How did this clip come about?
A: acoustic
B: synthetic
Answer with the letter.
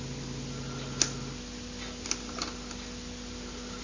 A